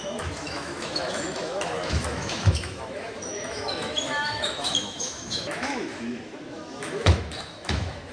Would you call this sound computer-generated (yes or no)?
yes